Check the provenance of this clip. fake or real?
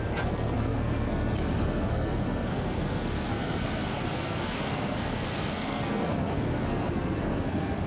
fake